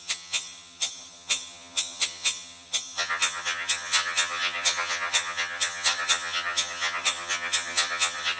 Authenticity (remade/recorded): remade